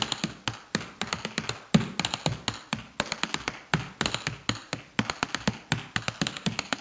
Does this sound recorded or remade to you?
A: recorded